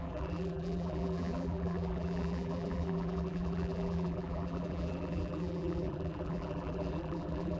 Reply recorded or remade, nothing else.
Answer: remade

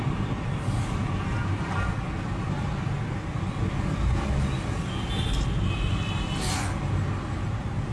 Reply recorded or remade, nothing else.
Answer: recorded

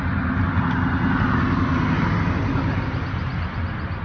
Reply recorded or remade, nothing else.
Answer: recorded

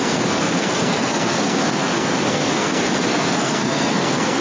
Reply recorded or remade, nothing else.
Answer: remade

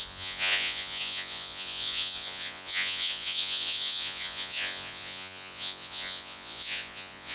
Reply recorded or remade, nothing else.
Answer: remade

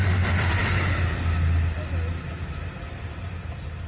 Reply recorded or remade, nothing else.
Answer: recorded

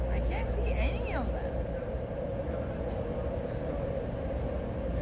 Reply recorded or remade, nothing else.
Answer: recorded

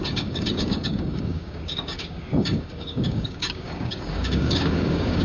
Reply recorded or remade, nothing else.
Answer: remade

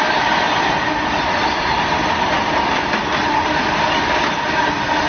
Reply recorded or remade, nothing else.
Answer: recorded